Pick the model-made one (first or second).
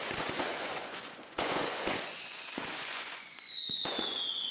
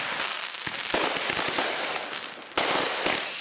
first